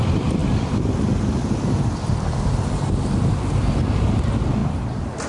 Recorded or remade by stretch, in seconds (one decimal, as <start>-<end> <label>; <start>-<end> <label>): 0.0-5.3 recorded